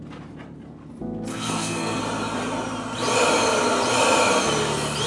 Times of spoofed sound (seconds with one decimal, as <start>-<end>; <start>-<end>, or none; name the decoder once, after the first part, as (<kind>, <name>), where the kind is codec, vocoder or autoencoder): 1.3-2.0 (codec, SNAC)